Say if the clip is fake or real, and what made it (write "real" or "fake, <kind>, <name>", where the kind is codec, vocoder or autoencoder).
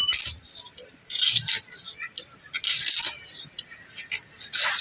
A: real